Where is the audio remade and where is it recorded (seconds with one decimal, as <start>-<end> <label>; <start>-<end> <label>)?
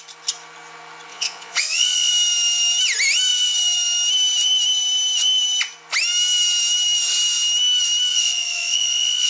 0.0-1.1 recorded; 1.1-2.1 remade; 2.1-8.1 recorded; 8.1-9.3 remade